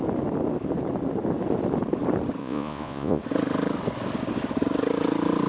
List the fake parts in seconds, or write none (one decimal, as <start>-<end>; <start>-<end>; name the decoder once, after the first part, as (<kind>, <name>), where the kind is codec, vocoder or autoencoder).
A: 2.4-3.2 (vocoder, Vocos)